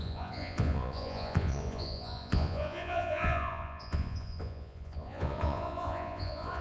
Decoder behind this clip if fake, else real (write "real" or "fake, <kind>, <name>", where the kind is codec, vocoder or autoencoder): fake, vocoder, Vocos